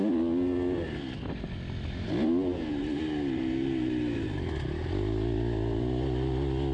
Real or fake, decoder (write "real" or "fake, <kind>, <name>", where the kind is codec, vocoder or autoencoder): real